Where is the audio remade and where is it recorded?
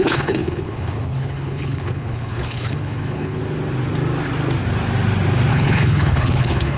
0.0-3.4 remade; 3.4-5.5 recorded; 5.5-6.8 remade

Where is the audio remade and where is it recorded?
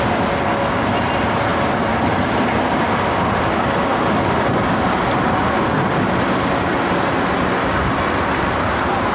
0.0-9.1 recorded